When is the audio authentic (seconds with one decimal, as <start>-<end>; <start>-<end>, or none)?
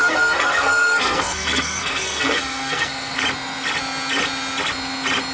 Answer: 3.2-5.3